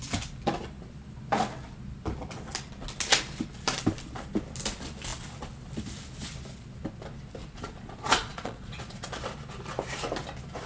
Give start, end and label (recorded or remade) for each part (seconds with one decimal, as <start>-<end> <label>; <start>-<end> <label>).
0.0-7.4 recorded; 7.4-9.1 remade; 9.1-10.7 recorded

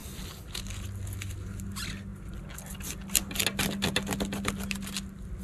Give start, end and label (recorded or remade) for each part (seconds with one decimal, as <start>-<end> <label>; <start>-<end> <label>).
0.0-0.6 remade; 0.6-5.4 recorded

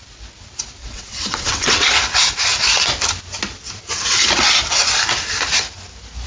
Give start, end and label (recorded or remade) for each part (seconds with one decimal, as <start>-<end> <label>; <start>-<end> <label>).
0.0-0.8 recorded; 0.8-2.0 remade; 2.0-6.3 recorded

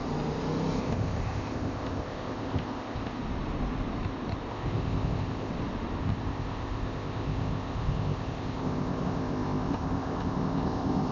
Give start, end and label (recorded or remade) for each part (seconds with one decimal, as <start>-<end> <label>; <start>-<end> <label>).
0.0-0.8 recorded; 0.8-3.2 remade; 3.2-4.5 recorded; 4.5-5.5 remade; 5.5-6.0 recorded; 6.0-11.1 remade

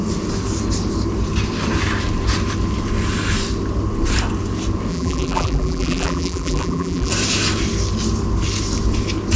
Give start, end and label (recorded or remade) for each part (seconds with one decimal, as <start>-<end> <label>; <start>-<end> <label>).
0.0-4.9 recorded; 4.9-7.1 remade; 7.1-9.4 recorded

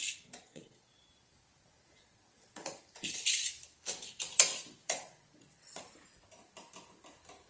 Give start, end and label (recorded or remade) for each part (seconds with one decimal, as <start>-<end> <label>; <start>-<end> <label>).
0.0-0.5 recorded; 0.5-2.8 remade; 2.8-4.5 recorded; 4.5-5.8 remade; 5.8-7.5 recorded

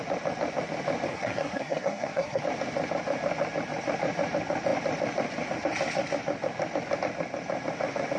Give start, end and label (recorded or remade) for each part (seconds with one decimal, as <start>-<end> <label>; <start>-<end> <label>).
0.0-1.1 recorded; 1.1-2.4 remade; 2.4-8.2 recorded

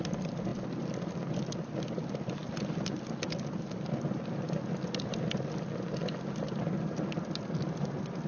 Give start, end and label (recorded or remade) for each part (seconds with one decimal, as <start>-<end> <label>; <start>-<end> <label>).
0.0-8.3 recorded